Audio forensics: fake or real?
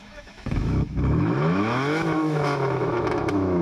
fake